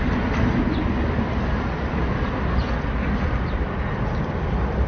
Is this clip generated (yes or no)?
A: no